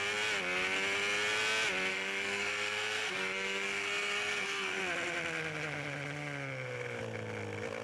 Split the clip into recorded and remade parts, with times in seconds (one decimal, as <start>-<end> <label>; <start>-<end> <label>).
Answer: 0.0-1.9 recorded; 1.9-4.8 remade; 4.8-7.8 recorded